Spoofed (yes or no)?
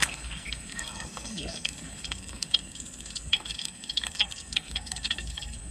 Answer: yes